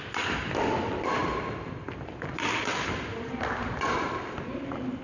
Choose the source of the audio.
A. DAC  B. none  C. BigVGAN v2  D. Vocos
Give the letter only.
B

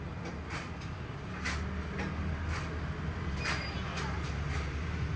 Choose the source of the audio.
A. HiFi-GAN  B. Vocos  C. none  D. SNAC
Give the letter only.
C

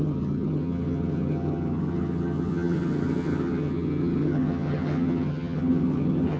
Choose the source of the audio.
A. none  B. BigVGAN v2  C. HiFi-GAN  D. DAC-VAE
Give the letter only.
C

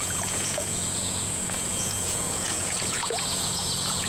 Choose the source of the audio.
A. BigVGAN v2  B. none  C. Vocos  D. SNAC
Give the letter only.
C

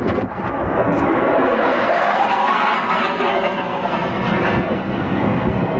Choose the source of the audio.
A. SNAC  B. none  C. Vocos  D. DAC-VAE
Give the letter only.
A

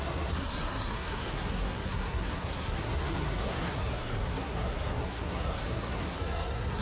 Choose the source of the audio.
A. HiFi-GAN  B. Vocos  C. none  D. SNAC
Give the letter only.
D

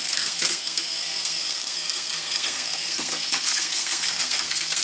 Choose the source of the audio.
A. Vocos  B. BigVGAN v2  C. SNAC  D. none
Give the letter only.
C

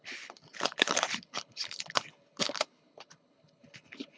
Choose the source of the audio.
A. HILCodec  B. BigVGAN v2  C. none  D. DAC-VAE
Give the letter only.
A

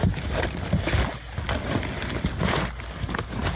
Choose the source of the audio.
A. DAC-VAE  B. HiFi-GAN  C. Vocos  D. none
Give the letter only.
D